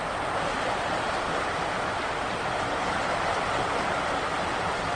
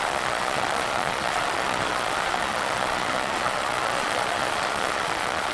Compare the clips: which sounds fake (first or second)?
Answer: second